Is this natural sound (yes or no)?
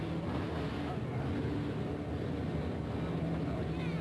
yes